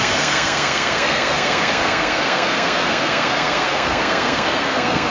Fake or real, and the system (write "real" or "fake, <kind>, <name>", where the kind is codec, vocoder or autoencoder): fake, codec, SNAC